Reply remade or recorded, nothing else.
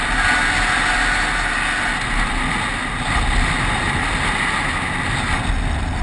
recorded